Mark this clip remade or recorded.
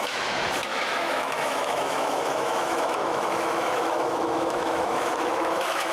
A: remade